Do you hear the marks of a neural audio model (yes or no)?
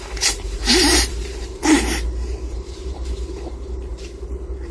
yes